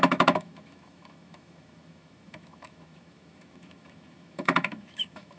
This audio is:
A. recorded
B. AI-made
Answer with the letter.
B